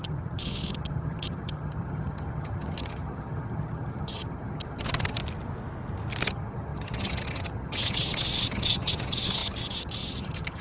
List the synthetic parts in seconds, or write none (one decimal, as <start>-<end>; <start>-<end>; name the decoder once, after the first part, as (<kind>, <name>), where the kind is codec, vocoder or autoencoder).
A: 0.0-5.2 (vocoder, HiFi-GAN); 6.2-10.6

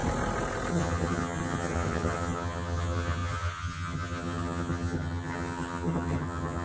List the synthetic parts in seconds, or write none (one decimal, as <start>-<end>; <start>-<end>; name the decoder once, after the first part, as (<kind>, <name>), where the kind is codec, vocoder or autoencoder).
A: 0.7-6.6 (vocoder, HiFi-GAN)